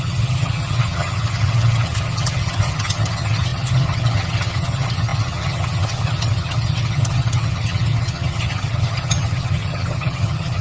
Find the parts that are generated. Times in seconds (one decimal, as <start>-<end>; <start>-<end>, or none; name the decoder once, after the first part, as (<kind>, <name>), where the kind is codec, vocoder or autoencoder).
0.0-10.6 (vocoder, HiFi-GAN)